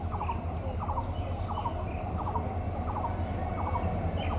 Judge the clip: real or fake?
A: real